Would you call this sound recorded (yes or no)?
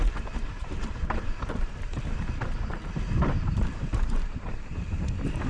no